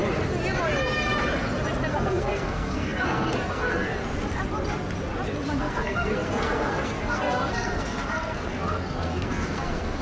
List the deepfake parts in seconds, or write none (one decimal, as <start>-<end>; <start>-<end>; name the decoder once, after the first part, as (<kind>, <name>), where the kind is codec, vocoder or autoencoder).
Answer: 1.9-3.9 (codec, SNAC); 5.6-10.0